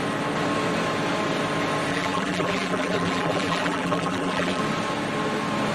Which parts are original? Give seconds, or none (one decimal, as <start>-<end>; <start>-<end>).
0.0-1.9; 4.6-5.7